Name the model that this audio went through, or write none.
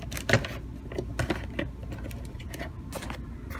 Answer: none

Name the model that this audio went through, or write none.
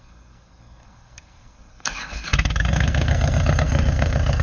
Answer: codec, SNAC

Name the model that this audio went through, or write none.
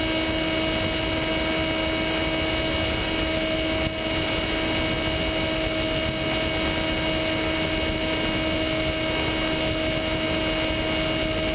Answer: none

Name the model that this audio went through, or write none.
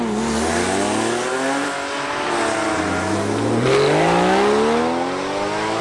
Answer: none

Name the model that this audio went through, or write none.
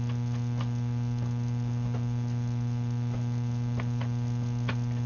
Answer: none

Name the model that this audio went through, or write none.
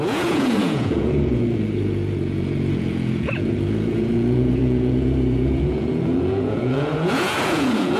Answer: vocoder, Vocos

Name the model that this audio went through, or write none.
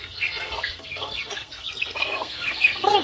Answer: codec, SNAC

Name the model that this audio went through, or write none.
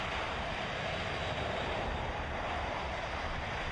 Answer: vocoder, BigVGAN v2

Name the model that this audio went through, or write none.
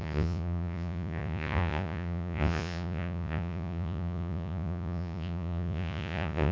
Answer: vocoder, Vocos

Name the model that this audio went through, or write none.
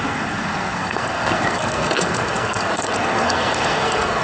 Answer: codec, SNAC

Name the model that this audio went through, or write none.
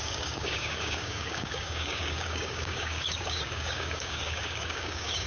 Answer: codec, DAC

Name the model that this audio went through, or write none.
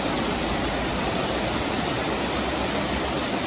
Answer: vocoder, BigVGAN v2